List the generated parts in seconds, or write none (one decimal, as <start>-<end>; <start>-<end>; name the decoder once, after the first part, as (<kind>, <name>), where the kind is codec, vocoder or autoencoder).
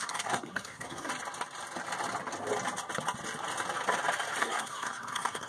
0.0-1.1 (codec, SNAC); 4.4-5.5